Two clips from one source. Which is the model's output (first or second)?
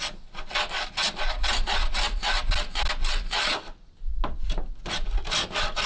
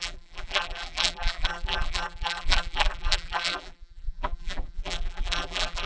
second